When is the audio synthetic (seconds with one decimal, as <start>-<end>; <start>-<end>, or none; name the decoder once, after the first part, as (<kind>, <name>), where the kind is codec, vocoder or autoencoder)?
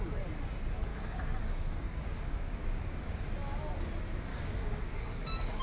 0.9-3.1 (codec, DAC); 4.3-5.6